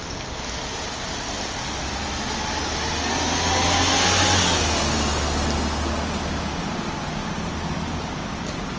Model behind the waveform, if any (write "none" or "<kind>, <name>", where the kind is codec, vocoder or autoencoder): none